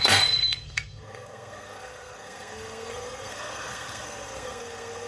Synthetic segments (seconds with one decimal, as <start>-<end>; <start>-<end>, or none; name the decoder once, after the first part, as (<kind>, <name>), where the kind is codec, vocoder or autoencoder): 0.0-5.1 (codec, SNAC)

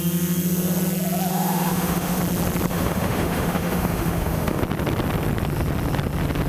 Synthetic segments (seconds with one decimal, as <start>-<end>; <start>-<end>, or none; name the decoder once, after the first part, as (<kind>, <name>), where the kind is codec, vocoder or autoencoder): 1.3-2.2 (autoencoder, DAC-VAE); 2.7-4.6

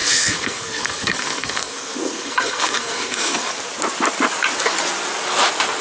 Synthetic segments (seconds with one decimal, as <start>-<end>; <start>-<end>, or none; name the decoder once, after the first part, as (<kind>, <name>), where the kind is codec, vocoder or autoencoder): 0.0-3.5 (codec, SNAC)

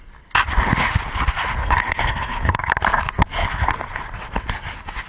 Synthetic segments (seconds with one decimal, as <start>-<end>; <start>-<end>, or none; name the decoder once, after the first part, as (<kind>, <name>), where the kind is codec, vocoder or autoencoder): 1.6-2.7 (codec, SNAC); 3.4-3.9

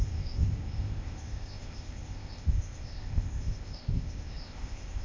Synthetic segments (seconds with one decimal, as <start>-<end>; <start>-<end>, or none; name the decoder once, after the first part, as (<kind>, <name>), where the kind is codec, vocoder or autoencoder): 0.0-5.0 (codec, ZipCodec)